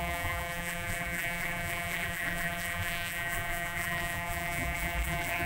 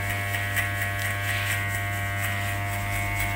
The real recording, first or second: second